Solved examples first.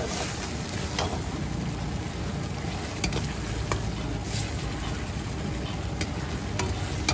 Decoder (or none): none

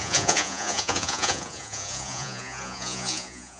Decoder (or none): vocoder, Vocos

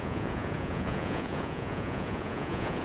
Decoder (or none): vocoder, Vocos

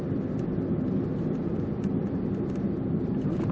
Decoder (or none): none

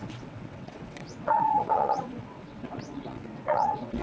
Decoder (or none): vocoder, WaveNeXt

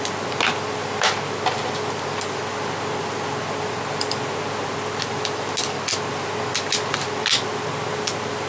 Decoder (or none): none